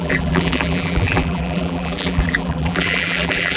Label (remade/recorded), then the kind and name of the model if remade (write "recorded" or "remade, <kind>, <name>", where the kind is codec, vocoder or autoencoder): remade, vocoder, BigVGAN v2